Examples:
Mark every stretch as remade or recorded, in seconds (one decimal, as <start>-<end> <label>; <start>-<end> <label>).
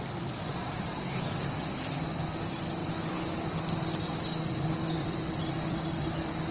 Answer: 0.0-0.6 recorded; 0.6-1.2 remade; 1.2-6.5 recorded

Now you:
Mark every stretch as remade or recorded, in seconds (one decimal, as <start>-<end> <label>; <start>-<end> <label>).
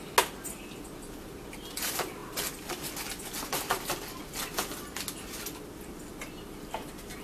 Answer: 0.0-7.2 recorded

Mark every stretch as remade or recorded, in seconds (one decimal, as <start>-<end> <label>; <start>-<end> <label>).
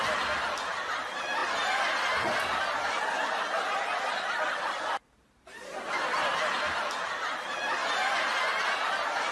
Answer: 0.0-9.3 recorded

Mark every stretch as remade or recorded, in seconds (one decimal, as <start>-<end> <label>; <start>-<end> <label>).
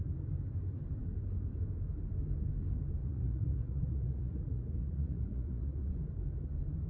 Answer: 0.0-3.0 recorded; 3.0-5.9 remade; 5.9-6.9 recorded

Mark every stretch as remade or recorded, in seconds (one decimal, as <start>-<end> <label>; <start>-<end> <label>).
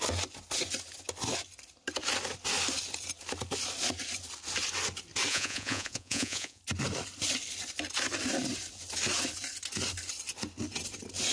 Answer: 0.0-5.3 recorded; 5.3-6.6 remade; 6.6-11.3 recorded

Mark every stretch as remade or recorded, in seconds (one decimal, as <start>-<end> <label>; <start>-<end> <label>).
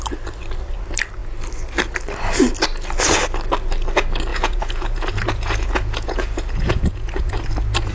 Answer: 0.0-4.3 recorded; 4.3-7.5 remade; 7.5-7.9 recorded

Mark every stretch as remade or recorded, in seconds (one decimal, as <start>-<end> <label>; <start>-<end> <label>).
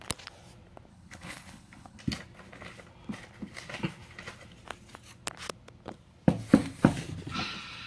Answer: 0.0-0.9 recorded; 0.9-2.0 remade; 2.0-7.9 recorded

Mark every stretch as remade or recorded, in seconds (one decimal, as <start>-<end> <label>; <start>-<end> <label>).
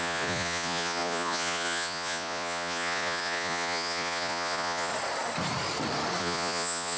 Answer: 0.0-4.9 remade; 4.9-6.2 recorded; 6.2-7.0 remade